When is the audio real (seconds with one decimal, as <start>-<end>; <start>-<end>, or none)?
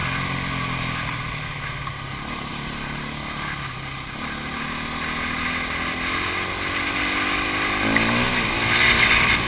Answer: 0.0-9.5